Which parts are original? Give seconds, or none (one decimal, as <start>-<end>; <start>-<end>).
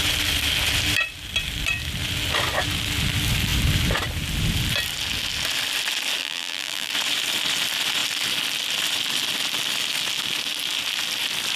0.0-6.2; 6.9-11.6